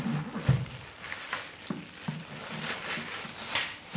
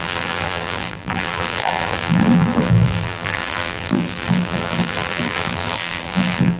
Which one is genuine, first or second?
first